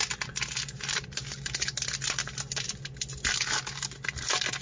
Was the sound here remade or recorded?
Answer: recorded